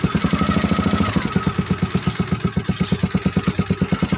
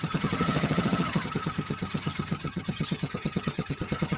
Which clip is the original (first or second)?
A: first